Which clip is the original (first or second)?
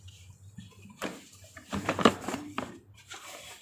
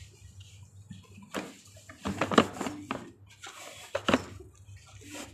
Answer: second